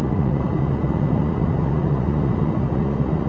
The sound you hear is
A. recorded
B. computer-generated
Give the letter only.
B